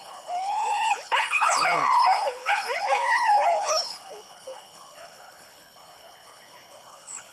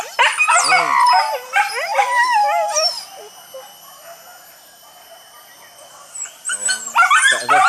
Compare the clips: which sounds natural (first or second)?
second